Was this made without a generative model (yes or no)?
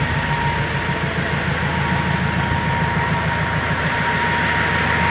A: yes